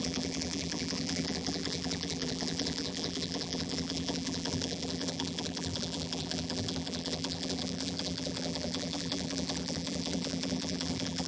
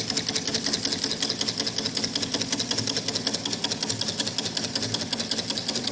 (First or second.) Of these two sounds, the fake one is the first